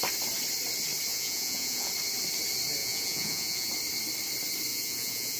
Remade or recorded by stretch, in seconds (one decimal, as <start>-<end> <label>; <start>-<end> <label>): 0.0-1.1 recorded; 1.1-1.9 remade; 1.9-2.8 recorded; 2.8-3.7 remade; 3.7-4.7 recorded; 4.7-5.4 remade